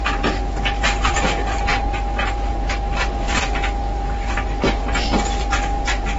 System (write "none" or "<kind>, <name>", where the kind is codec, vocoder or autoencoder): none